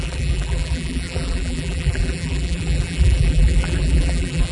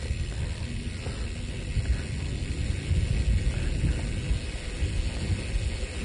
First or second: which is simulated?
first